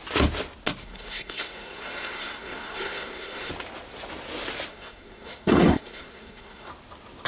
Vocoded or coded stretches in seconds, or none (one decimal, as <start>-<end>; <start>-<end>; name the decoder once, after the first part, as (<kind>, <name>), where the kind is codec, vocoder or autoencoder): 0.8-3.5 (codec, SNAC); 4.7-6.7